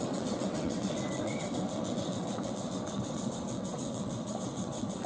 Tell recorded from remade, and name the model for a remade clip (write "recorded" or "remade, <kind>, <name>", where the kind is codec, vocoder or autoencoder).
remade, vocoder, WaveNeXt